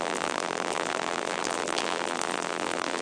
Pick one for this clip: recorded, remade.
remade